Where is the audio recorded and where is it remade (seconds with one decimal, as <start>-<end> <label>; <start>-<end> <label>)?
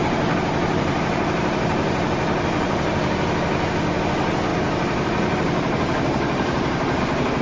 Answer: 0.0-3.3 remade; 3.3-4.5 recorded; 4.5-7.0 remade; 7.0-7.4 recorded